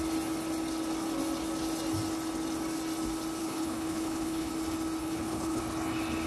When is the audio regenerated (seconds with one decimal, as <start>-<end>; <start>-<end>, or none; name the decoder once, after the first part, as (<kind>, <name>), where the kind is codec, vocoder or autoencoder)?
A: 3.4-4.5 (codec, HILCodec); 5.0-5.6